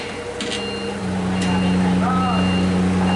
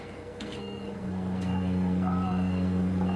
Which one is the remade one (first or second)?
second